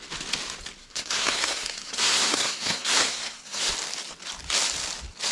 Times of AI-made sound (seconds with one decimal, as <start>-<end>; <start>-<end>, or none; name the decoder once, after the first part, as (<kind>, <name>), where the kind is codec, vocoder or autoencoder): 0.8-3.7 (codec, SNAC)